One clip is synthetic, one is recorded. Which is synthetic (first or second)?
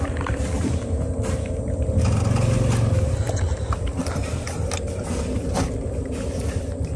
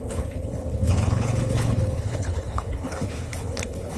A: second